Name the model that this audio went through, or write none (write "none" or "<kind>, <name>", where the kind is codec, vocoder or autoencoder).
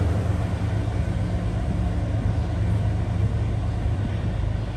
none